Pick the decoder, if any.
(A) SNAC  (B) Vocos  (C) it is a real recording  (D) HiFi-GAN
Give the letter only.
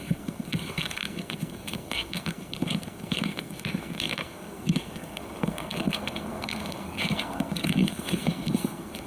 A